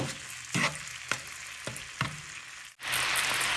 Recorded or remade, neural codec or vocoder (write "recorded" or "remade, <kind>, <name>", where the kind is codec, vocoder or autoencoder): recorded